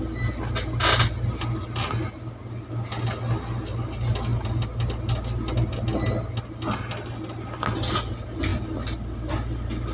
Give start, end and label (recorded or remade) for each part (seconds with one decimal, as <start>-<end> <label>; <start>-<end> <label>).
0.0-9.9 recorded